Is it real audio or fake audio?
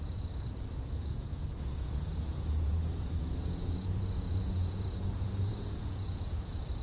fake